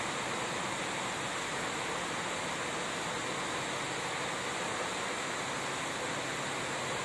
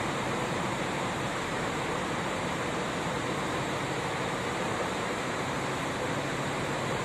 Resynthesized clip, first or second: second